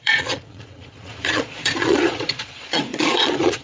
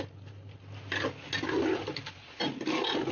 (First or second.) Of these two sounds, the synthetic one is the first